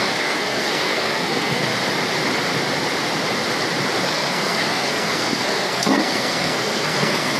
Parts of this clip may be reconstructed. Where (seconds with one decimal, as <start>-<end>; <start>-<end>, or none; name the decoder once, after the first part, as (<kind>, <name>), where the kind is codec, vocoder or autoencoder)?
0.0-1.7 (codec, SNAC); 4.0-7.4